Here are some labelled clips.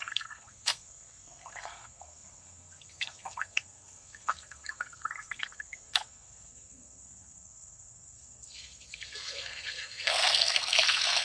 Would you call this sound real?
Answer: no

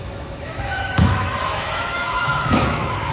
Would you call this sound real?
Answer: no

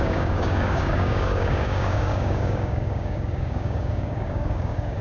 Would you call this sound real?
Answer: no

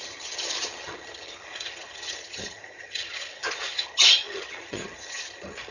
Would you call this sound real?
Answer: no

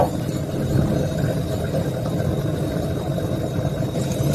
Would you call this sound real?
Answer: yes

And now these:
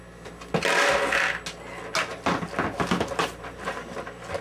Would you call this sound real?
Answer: yes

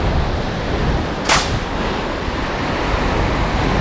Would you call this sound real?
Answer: yes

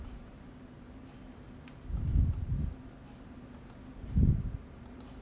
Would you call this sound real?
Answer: yes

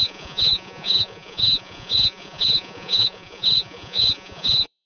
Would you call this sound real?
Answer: no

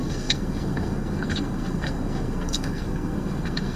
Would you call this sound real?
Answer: no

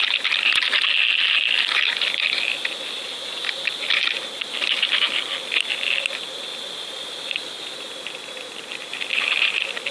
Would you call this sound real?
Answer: yes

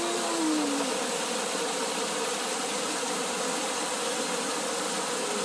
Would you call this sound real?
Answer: yes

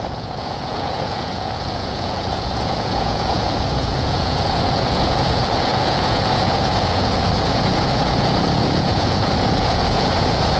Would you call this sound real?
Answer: no